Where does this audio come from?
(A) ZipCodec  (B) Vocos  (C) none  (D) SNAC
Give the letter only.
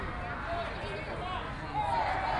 C